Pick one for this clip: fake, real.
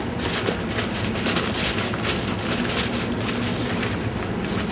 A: real